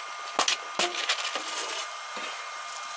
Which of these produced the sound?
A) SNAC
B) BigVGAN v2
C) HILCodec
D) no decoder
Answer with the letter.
D